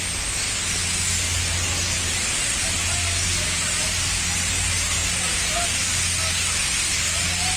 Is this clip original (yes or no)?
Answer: yes